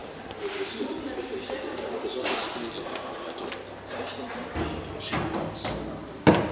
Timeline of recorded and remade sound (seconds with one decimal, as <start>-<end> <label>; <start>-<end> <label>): 0.0-6.5 recorded

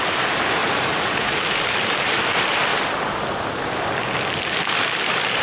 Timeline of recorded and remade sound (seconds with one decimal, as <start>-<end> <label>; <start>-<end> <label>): 0.0-0.6 recorded; 0.6-1.4 remade; 1.4-5.4 recorded

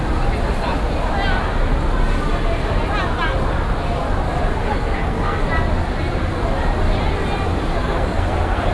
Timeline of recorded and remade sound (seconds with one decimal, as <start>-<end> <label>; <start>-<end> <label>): 0.0-4.6 recorded; 4.6-5.4 remade; 5.4-7.7 recorded; 7.7-8.7 remade

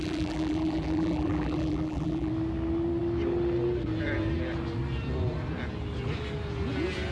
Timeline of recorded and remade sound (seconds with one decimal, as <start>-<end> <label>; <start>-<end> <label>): 0.0-2.3 remade; 2.3-7.1 recorded

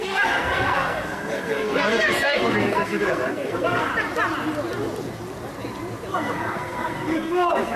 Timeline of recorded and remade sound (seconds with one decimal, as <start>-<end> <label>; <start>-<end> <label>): 0.0-3.9 remade; 3.9-6.1 recorded; 6.1-7.8 remade